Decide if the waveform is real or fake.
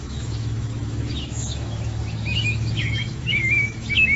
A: fake